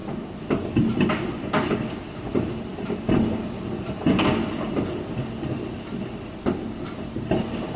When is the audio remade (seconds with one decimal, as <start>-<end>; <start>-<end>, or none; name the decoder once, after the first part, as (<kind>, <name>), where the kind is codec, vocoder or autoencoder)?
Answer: none